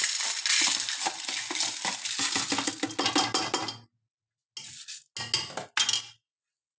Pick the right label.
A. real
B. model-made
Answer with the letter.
A